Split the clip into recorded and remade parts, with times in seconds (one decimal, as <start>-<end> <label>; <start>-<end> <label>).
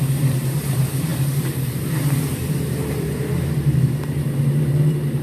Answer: 0.0-5.2 remade